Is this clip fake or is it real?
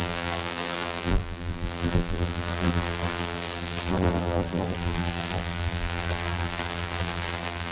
fake